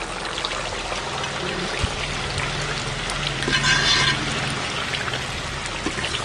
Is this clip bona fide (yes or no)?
yes